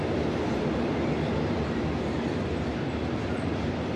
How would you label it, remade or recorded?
recorded